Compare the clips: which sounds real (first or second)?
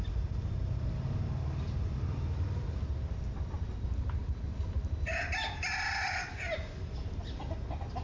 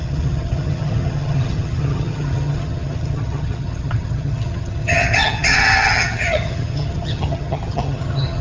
first